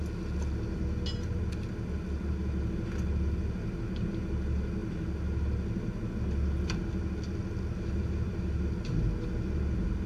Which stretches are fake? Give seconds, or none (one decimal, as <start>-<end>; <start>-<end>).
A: none